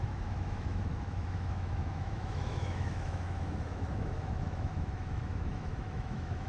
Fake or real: fake